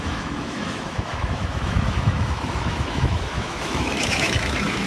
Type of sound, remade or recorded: remade